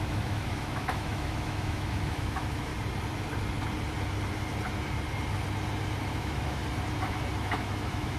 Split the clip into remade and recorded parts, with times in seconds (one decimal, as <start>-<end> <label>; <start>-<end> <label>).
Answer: 0.0-2.7 remade; 2.7-6.1 recorded; 6.1-6.6 remade; 6.6-7.4 recorded; 7.4-8.2 remade